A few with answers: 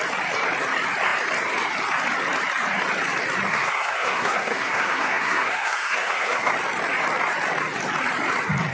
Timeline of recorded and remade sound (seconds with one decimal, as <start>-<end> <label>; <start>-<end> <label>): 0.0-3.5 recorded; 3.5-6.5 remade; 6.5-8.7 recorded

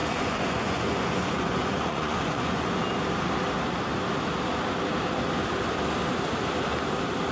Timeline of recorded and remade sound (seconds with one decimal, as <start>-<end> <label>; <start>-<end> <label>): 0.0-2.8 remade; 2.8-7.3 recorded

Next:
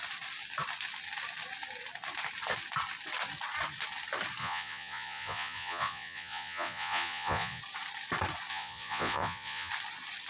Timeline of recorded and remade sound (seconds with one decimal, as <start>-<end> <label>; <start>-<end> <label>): 0.0-4.4 recorded; 4.4-7.6 remade; 7.6-8.5 recorded; 8.5-9.7 remade; 9.7-10.3 recorded

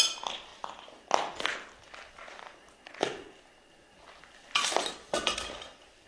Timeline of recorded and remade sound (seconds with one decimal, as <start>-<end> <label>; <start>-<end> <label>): 0.0-6.1 recorded

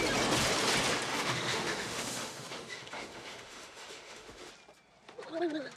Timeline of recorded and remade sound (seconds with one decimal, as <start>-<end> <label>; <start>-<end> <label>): 0.0-1.1 recorded; 1.1-4.5 remade; 4.5-5.8 recorded

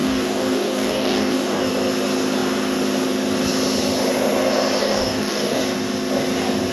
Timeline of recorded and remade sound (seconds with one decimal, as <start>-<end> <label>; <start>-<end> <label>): 0.0-1.7 remade; 1.7-4.8 recorded; 4.8-5.6 remade; 5.6-6.7 recorded

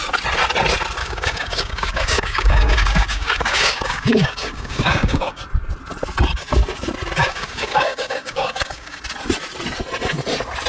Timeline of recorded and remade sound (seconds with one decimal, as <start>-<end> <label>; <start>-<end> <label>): 0.0-1.0 recorded; 1.0-5.4 remade; 5.4-7.2 recorded; 7.2-9.0 remade; 9.0-10.7 recorded